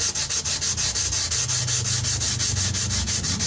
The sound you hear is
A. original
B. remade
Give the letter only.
A